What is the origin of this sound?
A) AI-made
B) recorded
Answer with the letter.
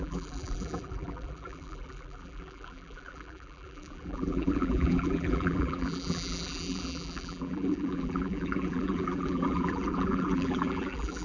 A